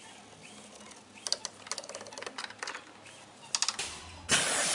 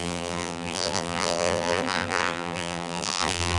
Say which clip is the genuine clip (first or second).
first